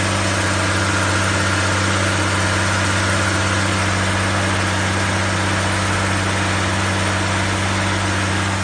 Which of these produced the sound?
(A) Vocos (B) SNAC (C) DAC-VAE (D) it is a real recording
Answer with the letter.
D